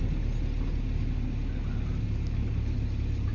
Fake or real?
real